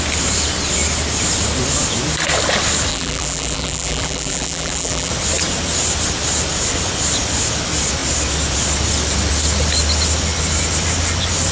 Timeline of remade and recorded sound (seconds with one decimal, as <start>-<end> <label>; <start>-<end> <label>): 0.0-2.9 recorded; 2.9-5.1 remade; 5.1-11.5 recorded